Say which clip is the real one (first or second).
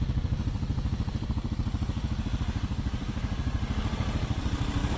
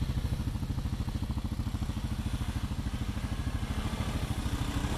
second